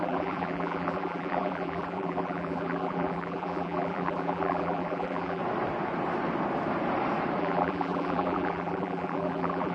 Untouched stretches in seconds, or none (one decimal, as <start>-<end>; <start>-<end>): 5.4-7.4